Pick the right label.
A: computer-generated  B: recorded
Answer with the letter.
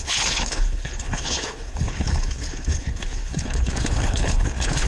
A